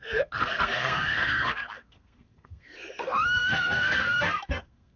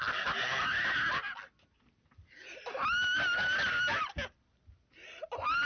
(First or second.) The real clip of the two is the second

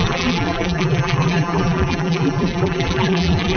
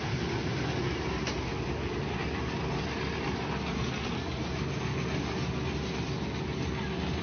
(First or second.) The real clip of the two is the second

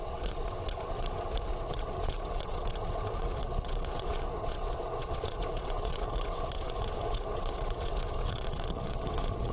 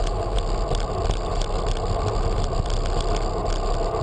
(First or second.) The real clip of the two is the second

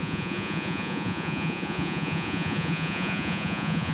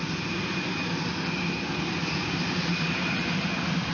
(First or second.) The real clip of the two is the second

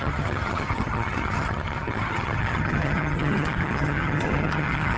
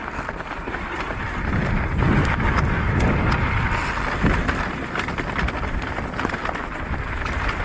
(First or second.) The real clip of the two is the second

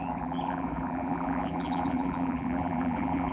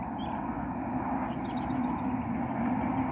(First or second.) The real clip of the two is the second